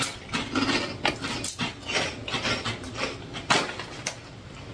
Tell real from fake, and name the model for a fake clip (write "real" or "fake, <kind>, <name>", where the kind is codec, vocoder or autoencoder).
real